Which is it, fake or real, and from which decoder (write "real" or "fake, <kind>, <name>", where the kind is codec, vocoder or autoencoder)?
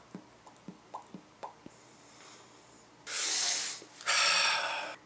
real